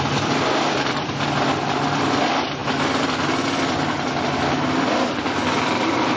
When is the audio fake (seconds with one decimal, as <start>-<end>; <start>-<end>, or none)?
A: 0.0-2.6; 5.8-6.2